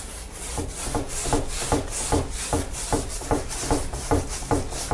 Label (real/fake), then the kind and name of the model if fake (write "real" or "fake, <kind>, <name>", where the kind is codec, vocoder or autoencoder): real